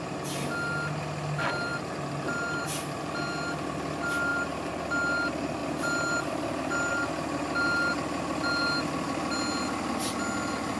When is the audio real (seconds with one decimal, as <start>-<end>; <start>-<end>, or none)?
0.0-4.3; 4.8-5.6; 6.9-10.8